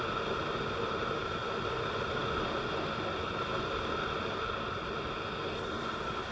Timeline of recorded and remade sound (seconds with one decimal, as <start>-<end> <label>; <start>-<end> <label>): 0.0-6.3 recorded